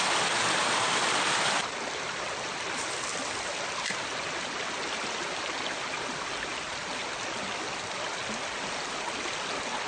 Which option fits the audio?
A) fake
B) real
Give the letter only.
B